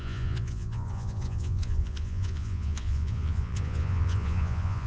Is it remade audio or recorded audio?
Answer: remade